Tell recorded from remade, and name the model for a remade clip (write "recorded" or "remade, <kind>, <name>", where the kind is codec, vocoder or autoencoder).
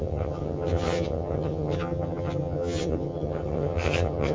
remade, vocoder, HiFi-GAN